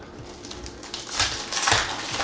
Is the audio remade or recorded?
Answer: recorded